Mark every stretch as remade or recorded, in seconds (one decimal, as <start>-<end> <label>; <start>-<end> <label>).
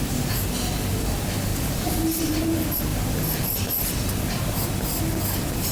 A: 0.0-1.5 recorded; 1.5-2.4 remade; 2.4-2.9 recorded; 2.9-3.6 remade; 3.6-5.7 recorded